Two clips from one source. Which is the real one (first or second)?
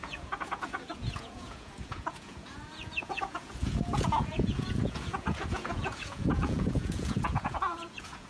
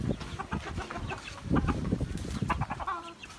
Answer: second